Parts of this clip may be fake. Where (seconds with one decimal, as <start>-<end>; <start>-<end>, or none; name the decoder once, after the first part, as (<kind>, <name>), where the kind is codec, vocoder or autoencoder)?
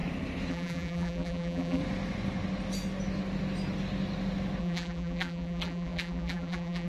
0.5-1.8 (vocoder, BigVGAN v2); 4.6-6.9